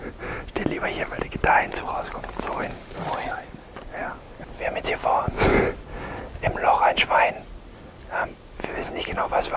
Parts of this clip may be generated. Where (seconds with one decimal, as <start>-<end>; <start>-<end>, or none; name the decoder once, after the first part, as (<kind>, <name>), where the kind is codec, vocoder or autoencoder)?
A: none